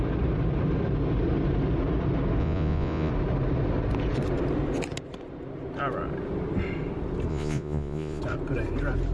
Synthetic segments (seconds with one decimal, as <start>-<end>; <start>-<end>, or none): 2.4-3.1; 7.3-8.2